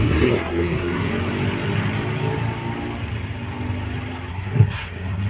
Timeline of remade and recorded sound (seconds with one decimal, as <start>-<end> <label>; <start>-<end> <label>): 0.0-1.1 remade; 1.1-4.3 recorded; 4.3-5.3 remade